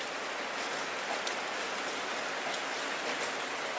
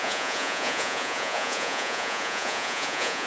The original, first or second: first